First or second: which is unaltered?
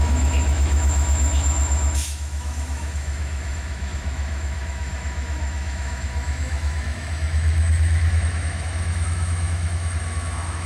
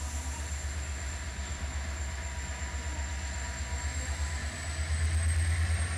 second